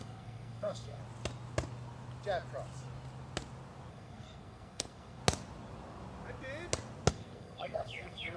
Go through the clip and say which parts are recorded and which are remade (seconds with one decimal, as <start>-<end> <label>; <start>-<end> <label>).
0.0-1.0 remade; 1.0-3.9 recorded; 3.9-5.2 remade; 5.2-7.1 recorded; 7.1-8.4 remade